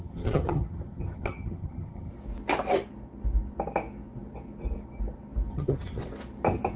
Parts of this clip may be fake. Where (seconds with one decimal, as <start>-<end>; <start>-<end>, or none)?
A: 0.0-2.1; 5.5-6.0